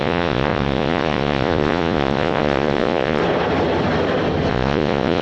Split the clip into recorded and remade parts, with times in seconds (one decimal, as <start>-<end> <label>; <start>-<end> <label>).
0.0-3.2 remade; 3.2-4.5 recorded; 4.5-5.2 remade